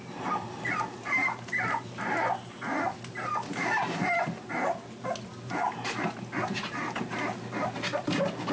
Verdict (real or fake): real